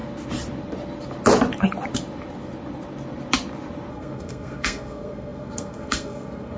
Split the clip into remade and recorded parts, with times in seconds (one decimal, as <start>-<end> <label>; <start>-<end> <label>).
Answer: 0.0-3.9 recorded; 3.9-6.6 remade